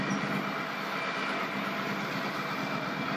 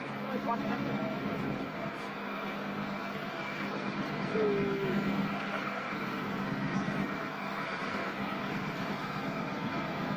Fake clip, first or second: second